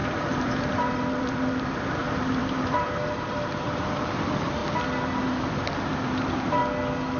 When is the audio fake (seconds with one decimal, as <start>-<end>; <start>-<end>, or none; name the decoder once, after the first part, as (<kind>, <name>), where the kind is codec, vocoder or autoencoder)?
0.0-4.6 (vocoder, BigVGAN v2); 5.3-6.6